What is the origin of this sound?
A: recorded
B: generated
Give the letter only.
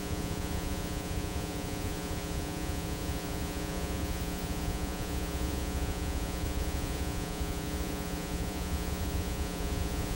B